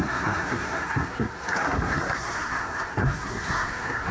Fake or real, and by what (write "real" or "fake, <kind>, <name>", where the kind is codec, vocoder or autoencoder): fake, codec, SNAC